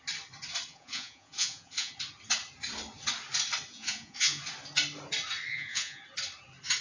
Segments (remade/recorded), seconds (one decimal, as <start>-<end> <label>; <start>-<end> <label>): 0.0-0.7 recorded; 0.7-1.9 remade; 1.9-3.7 recorded; 3.7-4.4 remade; 4.4-5.5 recorded; 5.5-6.0 remade; 6.0-6.8 recorded